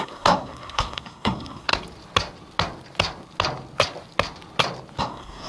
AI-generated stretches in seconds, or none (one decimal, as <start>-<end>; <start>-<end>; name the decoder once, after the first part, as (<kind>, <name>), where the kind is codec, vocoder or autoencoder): 0.0-1.7 (codec, SNAC); 5.0-5.5